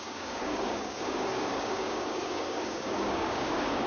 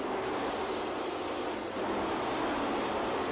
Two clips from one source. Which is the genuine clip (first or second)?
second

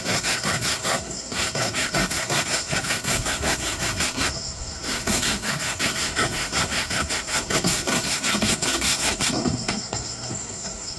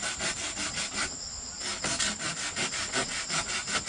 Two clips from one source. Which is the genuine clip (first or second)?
second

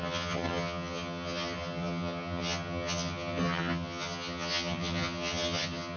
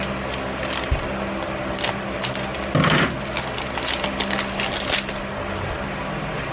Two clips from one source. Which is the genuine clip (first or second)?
second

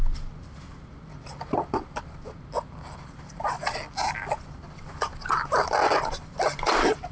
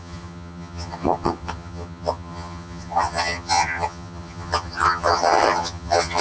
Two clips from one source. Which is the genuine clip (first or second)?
first